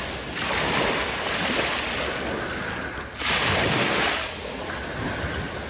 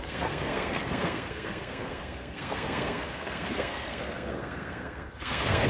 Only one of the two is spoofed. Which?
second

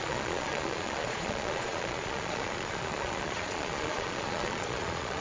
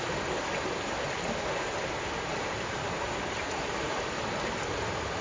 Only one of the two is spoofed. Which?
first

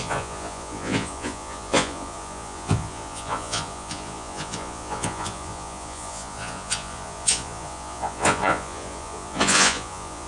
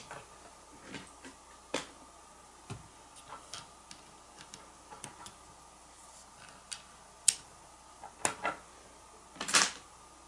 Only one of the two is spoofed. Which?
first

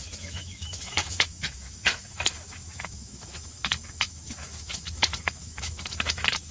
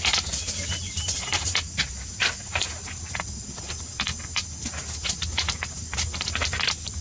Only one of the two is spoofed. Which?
first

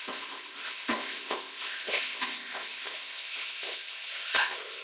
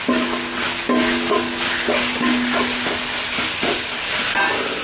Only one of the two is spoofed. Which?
first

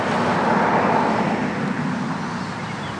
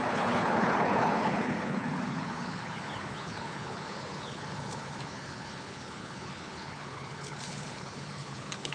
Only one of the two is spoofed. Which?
second